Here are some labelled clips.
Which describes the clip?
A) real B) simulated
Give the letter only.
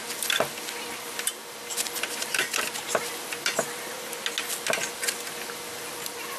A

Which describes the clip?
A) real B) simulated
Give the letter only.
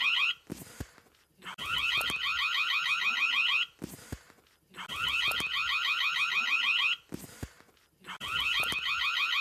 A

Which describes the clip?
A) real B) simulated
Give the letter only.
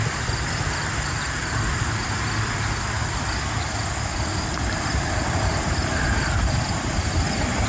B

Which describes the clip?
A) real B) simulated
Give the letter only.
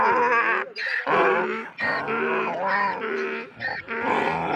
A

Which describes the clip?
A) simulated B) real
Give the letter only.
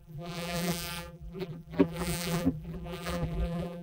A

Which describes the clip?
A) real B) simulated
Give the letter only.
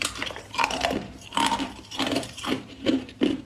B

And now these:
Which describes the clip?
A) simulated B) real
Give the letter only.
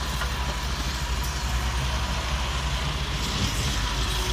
B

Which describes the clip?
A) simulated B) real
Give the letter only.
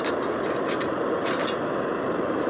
B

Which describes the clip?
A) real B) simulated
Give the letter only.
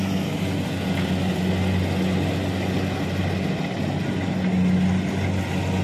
A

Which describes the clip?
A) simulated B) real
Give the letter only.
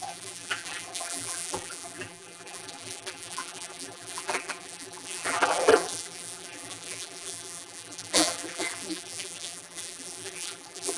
A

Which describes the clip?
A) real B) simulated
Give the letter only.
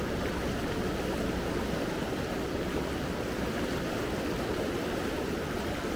A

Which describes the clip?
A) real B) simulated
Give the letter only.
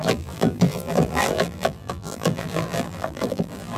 B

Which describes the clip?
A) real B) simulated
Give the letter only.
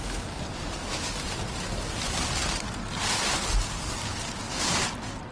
A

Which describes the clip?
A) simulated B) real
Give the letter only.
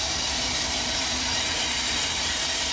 A